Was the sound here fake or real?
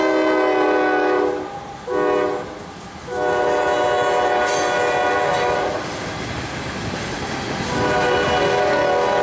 real